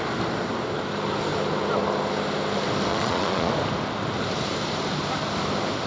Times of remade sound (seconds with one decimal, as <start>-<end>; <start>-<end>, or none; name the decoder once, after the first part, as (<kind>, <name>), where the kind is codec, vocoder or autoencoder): 2.9-3.5 (vocoder, Vocos)

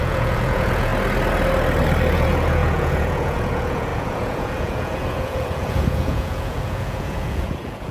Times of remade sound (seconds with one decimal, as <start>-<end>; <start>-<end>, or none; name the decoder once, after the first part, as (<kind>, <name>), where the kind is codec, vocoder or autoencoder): 0.0-0.9 (vocoder, Vocos); 2.1-7.9